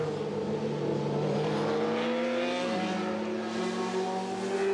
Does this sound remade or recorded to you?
recorded